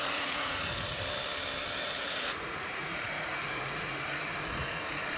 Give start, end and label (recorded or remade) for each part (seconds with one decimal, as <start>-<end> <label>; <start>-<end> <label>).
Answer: 0.0-1.0 remade; 1.0-1.8 recorded; 1.8-5.2 remade